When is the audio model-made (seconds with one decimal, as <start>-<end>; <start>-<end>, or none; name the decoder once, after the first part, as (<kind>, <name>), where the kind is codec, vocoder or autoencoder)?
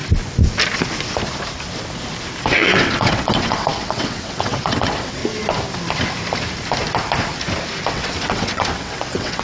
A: 2.5-5.2 (vocoder, WaveNeXt); 7.9-9.4